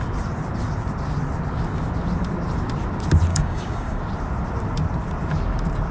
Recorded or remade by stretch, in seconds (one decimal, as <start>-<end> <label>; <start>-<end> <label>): 0.0-3.3 recorded; 3.3-4.0 remade; 4.0-5.9 recorded